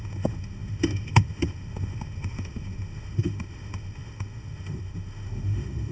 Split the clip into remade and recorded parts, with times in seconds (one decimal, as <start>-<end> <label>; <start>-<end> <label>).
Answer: 0.0-5.9 remade